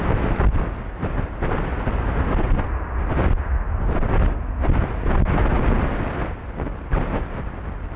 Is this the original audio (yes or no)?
yes